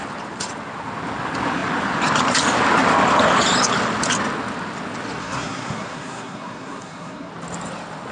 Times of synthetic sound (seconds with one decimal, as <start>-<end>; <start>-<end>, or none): 5.2-7.3